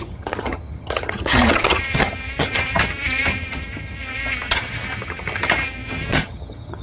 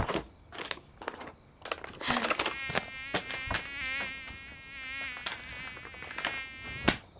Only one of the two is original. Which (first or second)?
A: second